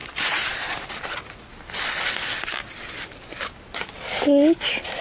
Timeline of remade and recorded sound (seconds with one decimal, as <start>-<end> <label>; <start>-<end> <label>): 0.0-0.9 remade; 0.9-5.0 recorded